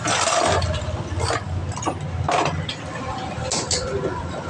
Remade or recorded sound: recorded